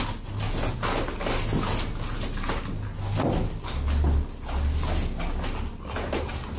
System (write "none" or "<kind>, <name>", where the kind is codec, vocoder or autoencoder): none